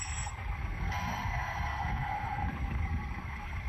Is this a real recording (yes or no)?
no